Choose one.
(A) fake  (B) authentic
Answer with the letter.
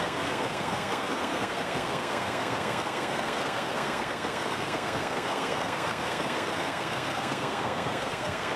A